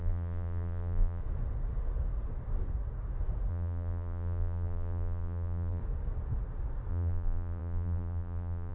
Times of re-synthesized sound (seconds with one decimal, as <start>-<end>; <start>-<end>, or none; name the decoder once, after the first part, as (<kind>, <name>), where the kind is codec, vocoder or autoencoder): 0.0-1.2 (vocoder, BigVGAN v2); 3.5-5.8; 6.9-8.7